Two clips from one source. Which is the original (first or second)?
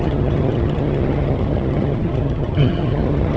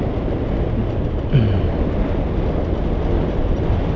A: second